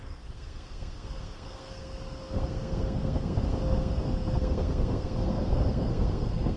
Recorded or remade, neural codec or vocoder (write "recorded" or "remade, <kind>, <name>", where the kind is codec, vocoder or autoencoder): remade, codec, SNAC